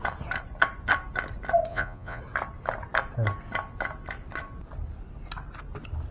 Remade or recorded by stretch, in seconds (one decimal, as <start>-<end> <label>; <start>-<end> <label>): 0.0-1.7 recorded; 1.7-2.2 remade; 2.2-6.1 recorded